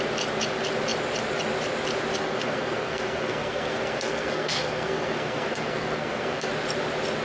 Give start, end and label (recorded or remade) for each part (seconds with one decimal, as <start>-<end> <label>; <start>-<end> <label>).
0.0-2.2 recorded; 2.2-6.5 remade; 6.5-7.2 recorded